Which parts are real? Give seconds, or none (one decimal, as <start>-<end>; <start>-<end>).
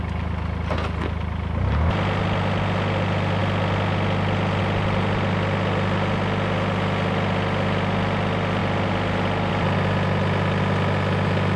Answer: 0.0-11.6